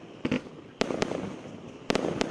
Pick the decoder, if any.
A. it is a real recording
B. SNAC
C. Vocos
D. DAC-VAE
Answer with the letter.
A